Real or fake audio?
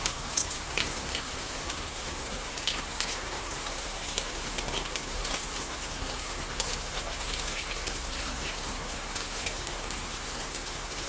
fake